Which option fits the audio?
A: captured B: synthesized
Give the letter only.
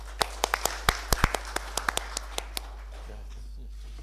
A